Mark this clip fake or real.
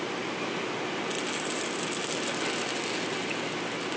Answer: real